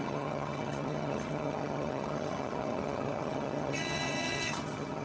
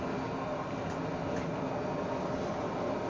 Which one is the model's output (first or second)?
first